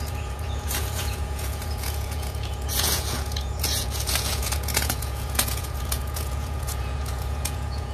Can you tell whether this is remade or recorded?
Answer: remade